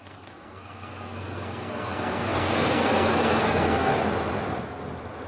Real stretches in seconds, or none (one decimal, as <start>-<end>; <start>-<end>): 3.9-5.3